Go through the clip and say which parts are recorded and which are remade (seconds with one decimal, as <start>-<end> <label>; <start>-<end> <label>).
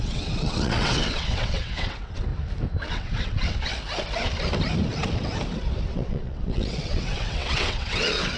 0.0-2.3 remade; 2.3-2.9 recorded; 2.9-3.7 remade; 3.7-5.9 recorded; 5.9-8.4 remade